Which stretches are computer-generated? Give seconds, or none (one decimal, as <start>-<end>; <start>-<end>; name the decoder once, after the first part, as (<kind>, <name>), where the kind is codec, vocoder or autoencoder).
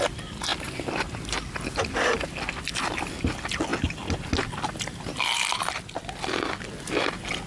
none